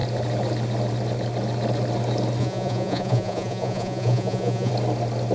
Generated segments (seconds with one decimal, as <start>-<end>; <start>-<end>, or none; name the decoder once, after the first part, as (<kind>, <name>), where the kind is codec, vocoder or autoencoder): 2.4-4.7 (vocoder, Vocos)